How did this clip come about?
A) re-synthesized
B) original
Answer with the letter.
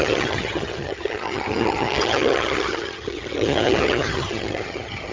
A